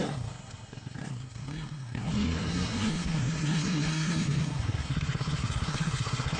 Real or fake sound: fake